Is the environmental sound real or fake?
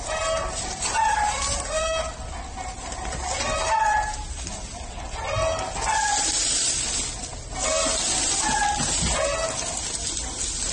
real